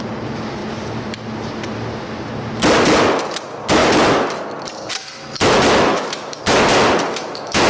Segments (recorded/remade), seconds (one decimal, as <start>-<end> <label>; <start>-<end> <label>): 0.0-5.9 recorded; 5.9-6.4 remade; 6.4-7.7 recorded